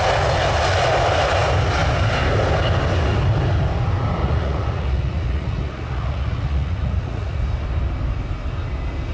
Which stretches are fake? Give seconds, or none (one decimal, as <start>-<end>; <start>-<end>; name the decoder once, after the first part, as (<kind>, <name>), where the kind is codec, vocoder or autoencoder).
4.2-7.4 (vocoder, Vocos)